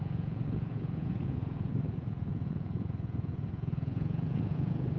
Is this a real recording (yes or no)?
no